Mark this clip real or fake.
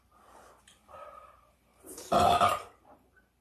fake